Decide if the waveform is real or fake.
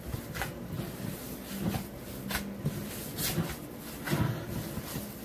real